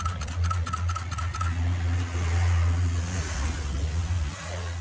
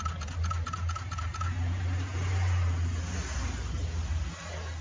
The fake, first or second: first